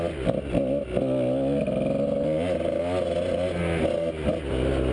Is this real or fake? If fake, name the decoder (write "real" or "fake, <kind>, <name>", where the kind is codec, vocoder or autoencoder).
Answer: real